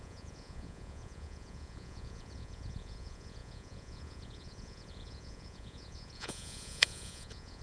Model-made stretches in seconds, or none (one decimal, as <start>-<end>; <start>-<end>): 0.0-7.6